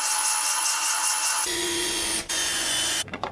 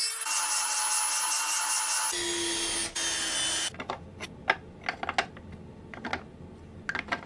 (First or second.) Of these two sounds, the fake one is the first